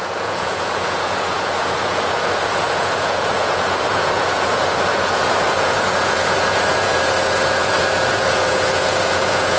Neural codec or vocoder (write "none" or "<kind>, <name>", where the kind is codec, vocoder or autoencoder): vocoder, Vocos